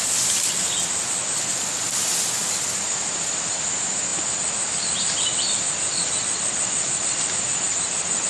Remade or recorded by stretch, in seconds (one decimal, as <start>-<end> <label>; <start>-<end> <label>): 0.0-8.3 recorded